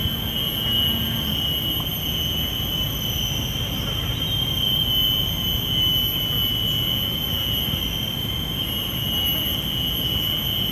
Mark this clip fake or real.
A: real